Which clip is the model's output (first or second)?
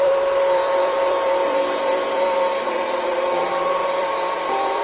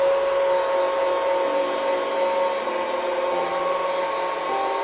first